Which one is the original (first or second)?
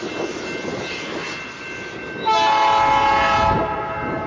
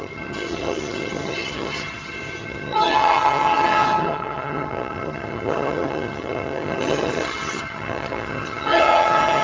first